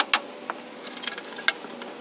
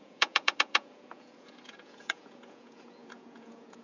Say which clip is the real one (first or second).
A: first